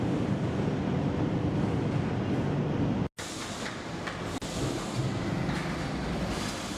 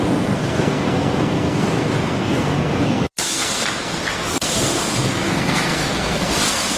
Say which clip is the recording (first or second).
first